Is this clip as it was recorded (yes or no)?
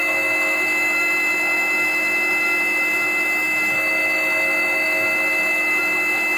no